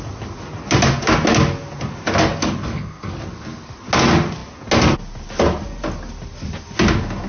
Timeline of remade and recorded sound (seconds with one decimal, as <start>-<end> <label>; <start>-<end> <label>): 0.0-2.6 recorded; 2.6-3.1 remade; 3.1-7.3 recorded